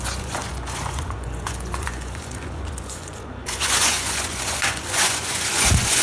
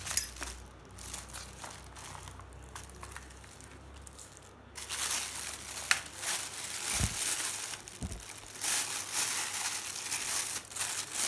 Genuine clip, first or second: second